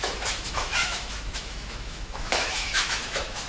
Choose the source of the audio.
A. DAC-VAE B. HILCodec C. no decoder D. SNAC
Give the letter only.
A